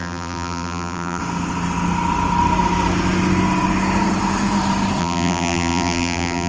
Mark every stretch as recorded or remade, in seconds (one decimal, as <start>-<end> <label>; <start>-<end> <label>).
0.0-1.2 remade; 1.2-5.0 recorded; 5.0-6.5 remade